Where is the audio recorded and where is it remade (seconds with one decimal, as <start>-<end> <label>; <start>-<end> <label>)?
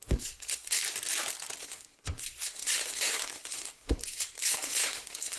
0.0-0.8 remade; 0.8-1.6 recorded; 1.6-5.4 remade